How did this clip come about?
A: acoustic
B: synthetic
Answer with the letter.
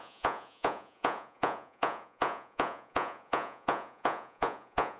B